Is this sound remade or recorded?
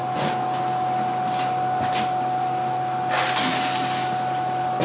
recorded